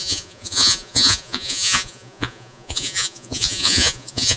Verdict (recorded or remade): remade